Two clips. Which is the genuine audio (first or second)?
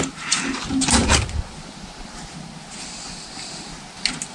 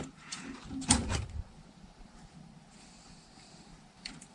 first